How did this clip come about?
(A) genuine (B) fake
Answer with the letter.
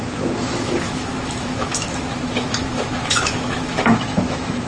B